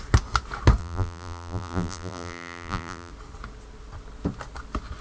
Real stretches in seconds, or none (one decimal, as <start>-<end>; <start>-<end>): 0.0-0.8; 3.1-5.0